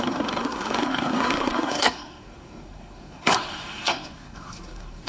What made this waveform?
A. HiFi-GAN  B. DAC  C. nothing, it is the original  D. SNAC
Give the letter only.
D